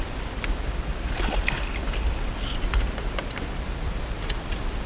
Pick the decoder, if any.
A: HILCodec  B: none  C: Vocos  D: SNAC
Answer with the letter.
B